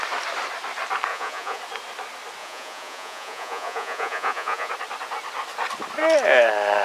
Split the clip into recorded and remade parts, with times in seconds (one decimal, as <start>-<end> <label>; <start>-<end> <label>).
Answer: 0.0-1.1 recorded; 1.1-1.6 remade; 1.6-2.4 recorded; 2.4-4.7 remade; 4.7-6.8 recorded